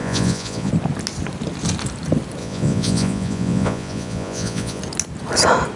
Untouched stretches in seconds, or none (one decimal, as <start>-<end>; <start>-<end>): 0.7-2.4; 4.8-5.8